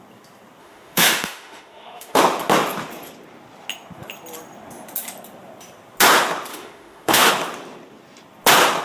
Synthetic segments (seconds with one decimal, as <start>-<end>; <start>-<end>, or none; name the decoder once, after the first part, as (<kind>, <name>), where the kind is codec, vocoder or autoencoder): 0.6-2.2 (autoencoder, DAC-VAE); 6.5-7.3